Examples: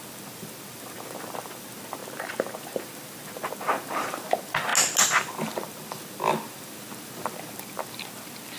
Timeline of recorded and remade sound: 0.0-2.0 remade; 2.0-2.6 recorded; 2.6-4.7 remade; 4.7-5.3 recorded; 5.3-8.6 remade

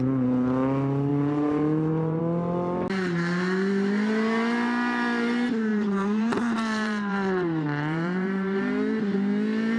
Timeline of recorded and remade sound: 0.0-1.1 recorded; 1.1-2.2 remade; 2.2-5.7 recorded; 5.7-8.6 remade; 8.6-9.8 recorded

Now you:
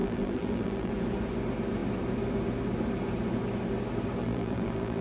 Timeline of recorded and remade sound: 0.0-0.9 remade; 0.9-4.2 recorded; 4.2-5.0 remade